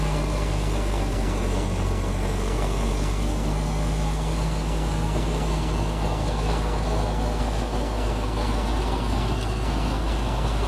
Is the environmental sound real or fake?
fake